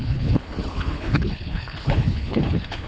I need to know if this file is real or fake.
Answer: fake